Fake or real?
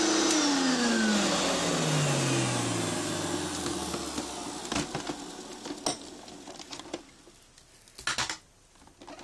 real